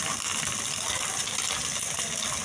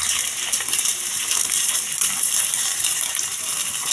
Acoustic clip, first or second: first